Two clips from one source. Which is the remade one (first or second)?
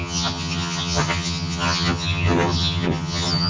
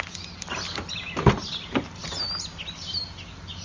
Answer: first